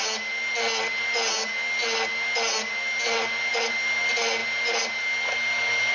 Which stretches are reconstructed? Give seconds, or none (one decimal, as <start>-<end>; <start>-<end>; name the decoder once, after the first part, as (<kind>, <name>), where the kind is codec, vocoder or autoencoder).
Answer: none